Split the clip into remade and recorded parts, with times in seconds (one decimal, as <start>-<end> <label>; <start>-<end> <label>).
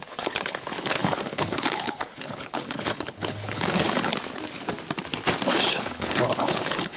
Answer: 0.0-4.1 remade; 4.1-5.5 recorded; 5.5-7.0 remade